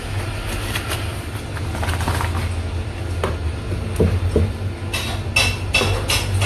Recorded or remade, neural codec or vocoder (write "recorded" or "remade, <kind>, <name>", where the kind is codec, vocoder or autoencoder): recorded